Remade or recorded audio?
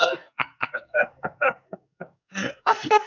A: remade